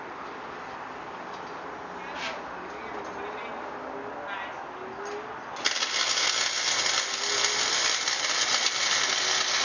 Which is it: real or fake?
real